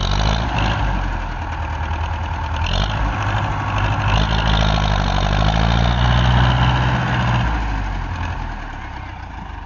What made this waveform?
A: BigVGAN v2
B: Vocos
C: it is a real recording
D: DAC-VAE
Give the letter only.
C